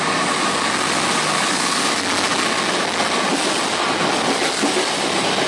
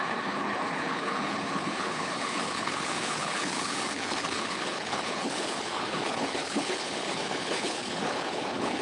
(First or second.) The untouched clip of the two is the first